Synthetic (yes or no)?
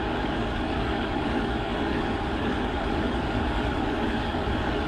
yes